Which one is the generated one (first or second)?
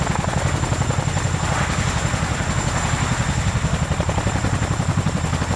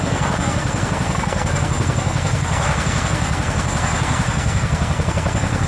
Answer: second